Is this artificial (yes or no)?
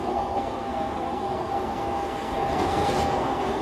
yes